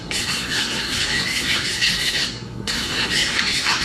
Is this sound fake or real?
fake